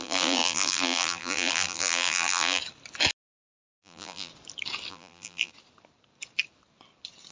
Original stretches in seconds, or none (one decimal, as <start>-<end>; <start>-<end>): 2.6-3.4; 4.3-4.9; 5.5-7.3